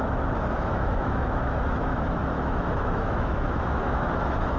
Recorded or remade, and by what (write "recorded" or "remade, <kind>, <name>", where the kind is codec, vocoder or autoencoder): remade, autoencoder, DAC-VAE